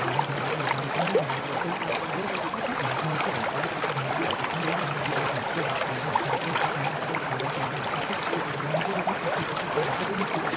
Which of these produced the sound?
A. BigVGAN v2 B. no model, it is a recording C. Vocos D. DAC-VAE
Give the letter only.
A